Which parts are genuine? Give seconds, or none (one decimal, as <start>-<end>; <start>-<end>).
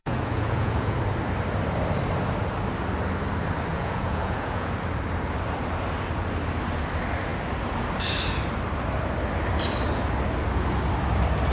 1.0-3.7; 4.7-11.5